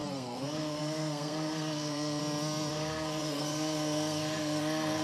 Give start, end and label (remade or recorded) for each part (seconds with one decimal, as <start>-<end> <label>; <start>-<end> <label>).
0.0-2.2 remade; 2.2-2.7 recorded; 2.7-5.0 remade